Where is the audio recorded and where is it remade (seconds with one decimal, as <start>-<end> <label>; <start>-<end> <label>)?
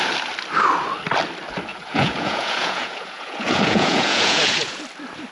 0.0-1.7 recorded; 1.7-4.8 remade; 4.8-5.3 recorded